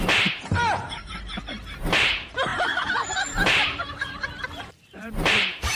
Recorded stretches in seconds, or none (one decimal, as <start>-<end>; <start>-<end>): none